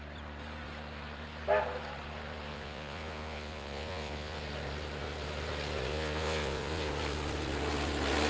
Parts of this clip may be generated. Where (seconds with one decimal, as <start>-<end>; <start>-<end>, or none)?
2.5-4.4; 5.9-6.9